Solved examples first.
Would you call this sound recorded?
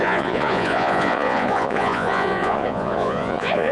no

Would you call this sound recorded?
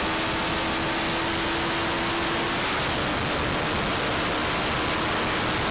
yes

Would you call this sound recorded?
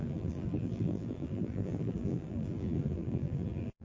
no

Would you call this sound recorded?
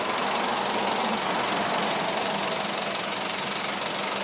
yes